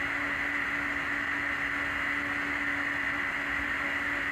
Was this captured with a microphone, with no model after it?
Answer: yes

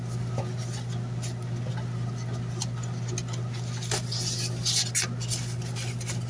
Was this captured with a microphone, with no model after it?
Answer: yes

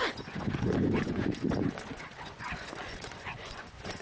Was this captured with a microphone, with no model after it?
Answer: no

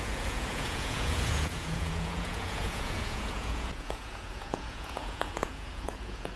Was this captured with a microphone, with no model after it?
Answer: no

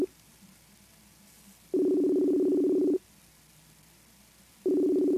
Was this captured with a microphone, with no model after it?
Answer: yes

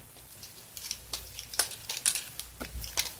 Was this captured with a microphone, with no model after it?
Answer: no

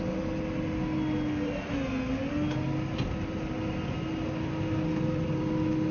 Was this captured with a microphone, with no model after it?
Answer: yes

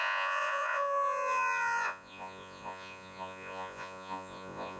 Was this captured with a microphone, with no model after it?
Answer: no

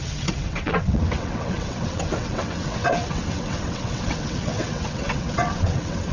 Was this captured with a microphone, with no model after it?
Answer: no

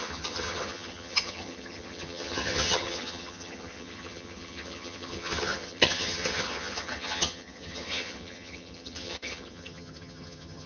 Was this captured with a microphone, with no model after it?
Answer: no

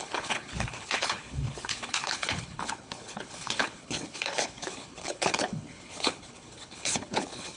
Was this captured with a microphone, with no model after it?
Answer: no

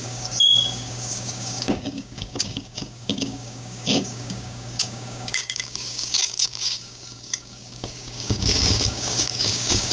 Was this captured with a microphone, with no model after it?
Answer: no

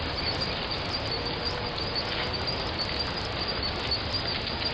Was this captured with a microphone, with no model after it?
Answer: yes